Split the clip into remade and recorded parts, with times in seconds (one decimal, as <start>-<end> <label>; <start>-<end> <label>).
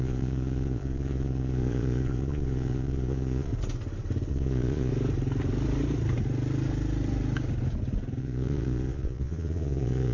0.0-3.5 remade; 3.5-4.3 recorded; 4.3-4.9 remade; 4.9-8.2 recorded; 8.2-10.1 remade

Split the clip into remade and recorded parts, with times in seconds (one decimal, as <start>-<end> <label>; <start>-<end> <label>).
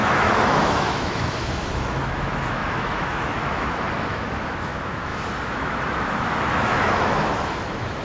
0.0-8.0 remade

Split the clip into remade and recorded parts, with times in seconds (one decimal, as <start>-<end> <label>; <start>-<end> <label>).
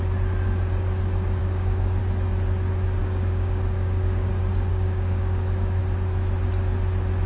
0.0-1.4 recorded; 1.4-2.0 remade; 2.0-3.0 recorded; 3.0-4.3 remade; 4.3-4.7 recorded; 4.7-5.8 remade; 5.8-7.3 recorded